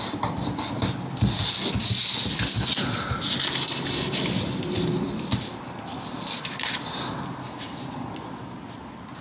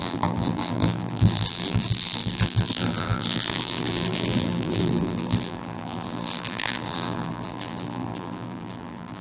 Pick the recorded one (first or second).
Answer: first